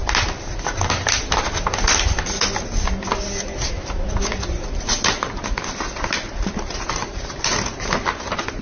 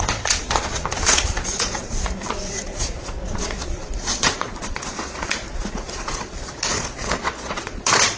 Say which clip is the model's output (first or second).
second